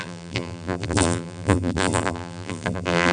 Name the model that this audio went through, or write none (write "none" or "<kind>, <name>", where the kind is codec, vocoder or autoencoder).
vocoder, BigVGAN v2